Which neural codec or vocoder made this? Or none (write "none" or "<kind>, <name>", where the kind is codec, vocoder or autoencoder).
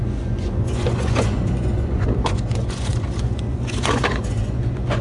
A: vocoder, Vocos